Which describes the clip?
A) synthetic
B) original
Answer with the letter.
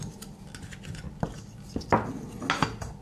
B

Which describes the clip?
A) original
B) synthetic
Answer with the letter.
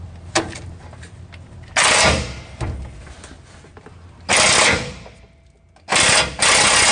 A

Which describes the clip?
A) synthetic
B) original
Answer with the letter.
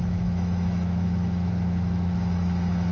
A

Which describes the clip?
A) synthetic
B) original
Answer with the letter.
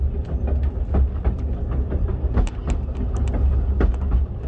B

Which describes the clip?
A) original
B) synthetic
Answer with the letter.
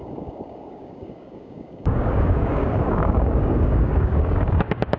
B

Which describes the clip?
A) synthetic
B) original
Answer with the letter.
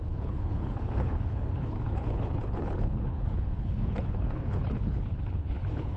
A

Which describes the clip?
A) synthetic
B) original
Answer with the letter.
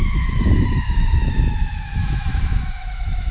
A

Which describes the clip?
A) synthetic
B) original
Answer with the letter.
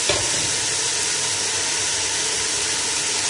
B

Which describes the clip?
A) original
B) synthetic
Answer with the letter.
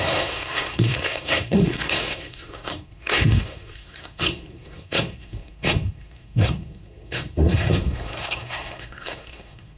B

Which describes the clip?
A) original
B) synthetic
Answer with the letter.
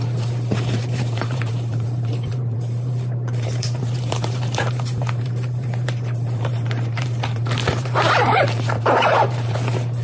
B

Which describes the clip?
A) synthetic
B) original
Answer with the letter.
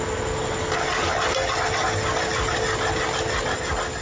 B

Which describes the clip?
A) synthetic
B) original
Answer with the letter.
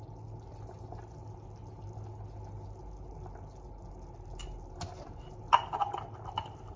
B